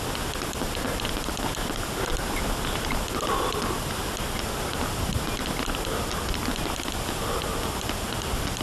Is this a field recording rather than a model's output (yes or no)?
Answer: yes